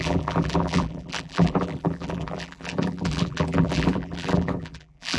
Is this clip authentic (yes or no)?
no